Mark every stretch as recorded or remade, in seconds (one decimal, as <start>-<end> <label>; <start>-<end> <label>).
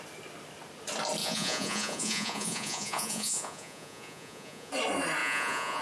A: 0.0-1.2 recorded; 1.2-4.7 remade; 4.7-5.2 recorded; 5.2-5.8 remade